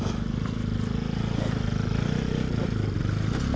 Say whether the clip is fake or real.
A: real